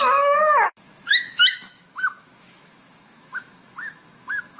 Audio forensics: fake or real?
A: fake